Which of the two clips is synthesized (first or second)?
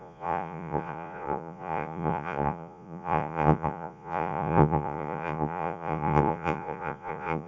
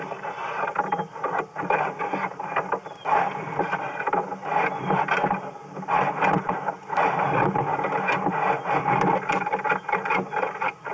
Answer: first